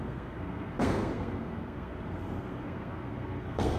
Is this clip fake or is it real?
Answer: fake